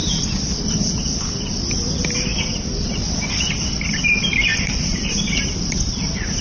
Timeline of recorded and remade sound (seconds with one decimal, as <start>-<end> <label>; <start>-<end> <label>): 0.0-1.0 remade; 1.0-4.5 recorded; 4.5-5.4 remade; 5.4-6.4 recorded